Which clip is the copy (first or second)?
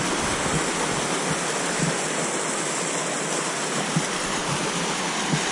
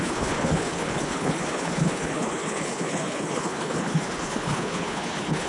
second